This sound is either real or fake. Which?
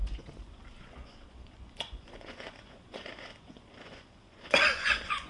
fake